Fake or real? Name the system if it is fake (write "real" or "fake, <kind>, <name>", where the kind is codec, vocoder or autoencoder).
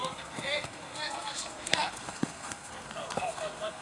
fake, codec, SNAC